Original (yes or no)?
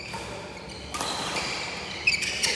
yes